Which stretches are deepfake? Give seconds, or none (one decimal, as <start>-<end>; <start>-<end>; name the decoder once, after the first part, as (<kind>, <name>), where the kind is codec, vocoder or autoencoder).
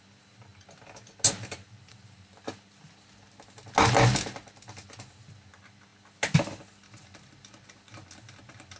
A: none